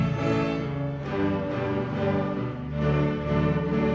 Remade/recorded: recorded